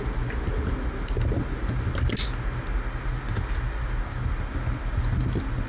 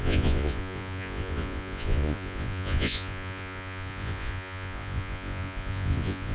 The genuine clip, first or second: first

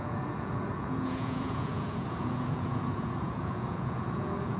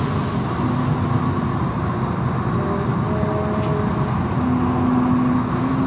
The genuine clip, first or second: second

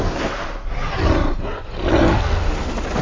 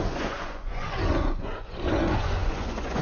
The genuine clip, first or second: first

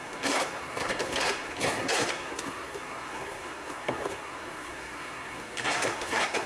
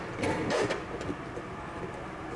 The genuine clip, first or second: second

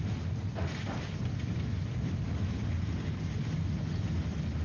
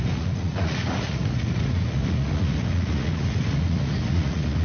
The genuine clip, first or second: first